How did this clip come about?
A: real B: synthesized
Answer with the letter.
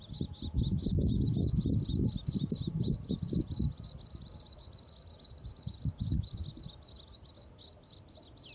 A